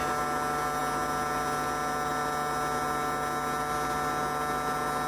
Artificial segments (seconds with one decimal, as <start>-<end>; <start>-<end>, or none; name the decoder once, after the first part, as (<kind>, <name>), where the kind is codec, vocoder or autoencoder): none